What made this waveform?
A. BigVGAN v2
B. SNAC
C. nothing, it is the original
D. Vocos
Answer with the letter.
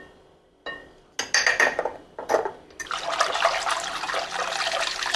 C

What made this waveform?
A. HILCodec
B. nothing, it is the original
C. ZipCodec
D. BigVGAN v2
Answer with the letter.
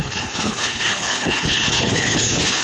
A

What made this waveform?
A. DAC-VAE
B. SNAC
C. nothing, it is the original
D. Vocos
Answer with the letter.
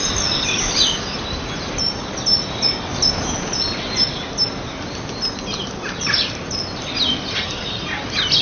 C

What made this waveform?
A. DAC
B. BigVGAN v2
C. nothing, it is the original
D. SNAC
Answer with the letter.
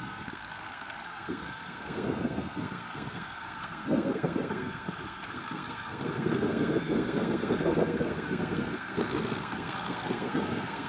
D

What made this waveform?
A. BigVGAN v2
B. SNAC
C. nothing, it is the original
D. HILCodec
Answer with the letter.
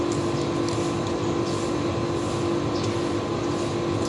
C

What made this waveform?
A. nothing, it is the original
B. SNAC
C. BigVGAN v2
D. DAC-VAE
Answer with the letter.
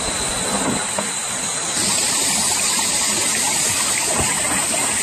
A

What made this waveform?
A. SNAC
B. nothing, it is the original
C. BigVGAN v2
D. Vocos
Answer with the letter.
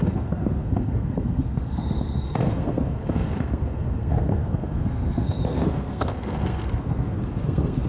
A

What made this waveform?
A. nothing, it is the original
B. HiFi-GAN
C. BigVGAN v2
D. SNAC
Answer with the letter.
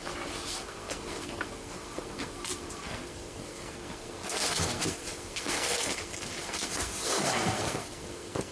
D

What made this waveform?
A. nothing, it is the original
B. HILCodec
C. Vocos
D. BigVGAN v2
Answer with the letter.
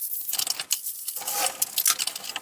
A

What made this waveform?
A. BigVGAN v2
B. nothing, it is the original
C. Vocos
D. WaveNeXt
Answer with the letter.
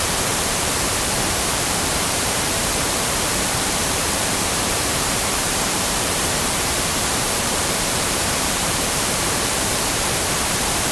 A